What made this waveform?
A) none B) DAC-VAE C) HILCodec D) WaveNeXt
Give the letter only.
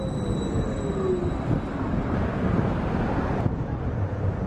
A